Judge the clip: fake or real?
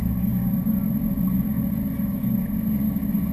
real